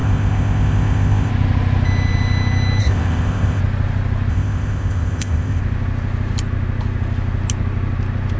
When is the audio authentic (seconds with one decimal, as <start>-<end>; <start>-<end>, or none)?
1.3-2.8; 3.6-4.3; 5.6-8.4